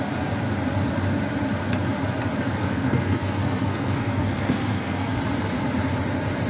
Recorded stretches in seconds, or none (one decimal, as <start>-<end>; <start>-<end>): 0.0-2.6; 5.2-6.5